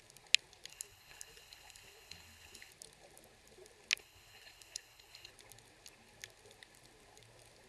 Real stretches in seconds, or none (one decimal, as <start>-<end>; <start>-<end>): 0.0-0.7; 2.7-4.0; 5.3-7.7